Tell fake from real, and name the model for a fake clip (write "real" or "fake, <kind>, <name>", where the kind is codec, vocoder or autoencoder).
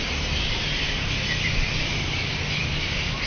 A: real